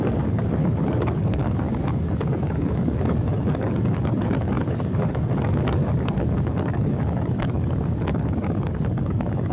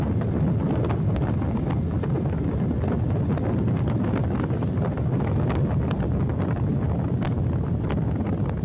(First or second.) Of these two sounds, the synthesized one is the first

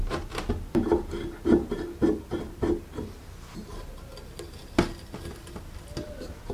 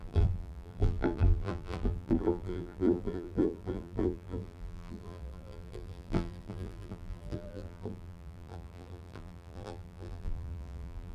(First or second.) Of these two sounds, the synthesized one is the second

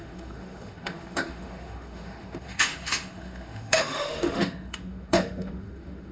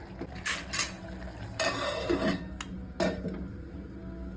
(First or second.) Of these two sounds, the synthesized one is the first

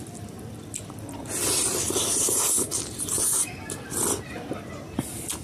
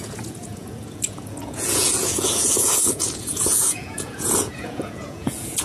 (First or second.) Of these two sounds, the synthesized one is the second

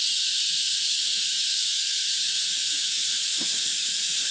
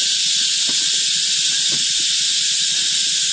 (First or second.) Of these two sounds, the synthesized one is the first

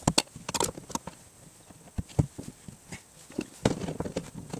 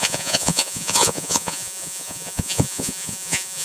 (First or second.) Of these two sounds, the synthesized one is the second